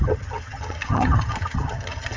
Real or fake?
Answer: fake